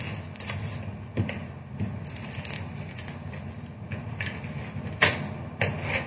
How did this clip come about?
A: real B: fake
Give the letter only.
A